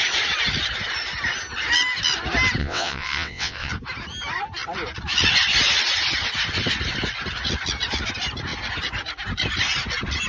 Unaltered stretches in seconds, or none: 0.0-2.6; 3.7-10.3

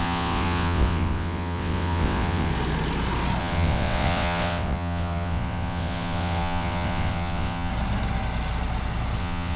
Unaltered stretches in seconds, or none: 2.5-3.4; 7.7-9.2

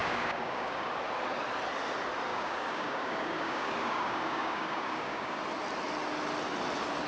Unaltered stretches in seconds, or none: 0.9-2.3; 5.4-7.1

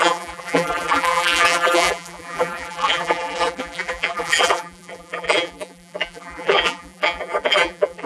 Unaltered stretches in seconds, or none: none

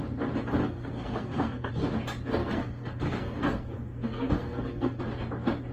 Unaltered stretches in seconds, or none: 0.0-0.6; 1.7-2.4; 5.0-5.7